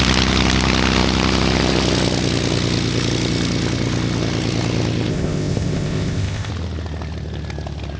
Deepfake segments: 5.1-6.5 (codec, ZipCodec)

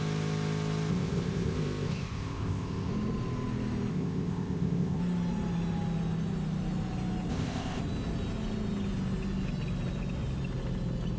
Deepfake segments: 0.9-2.9 (codec, ZipCodec); 3.9-5.0; 7.3-7.8

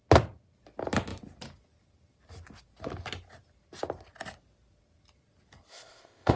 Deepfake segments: 5.7-6.4 (codec, ZipCodec)

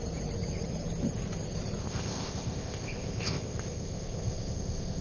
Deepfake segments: 1.8-5.0 (codec, ZipCodec)

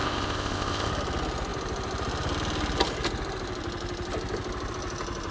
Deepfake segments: 0.0-0.9 (codec, ZipCodec)

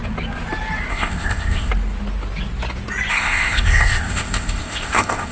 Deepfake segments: 0.9-1.7 (codec, ZipCodec); 3.1-5.3